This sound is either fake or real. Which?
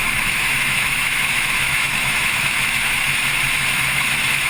fake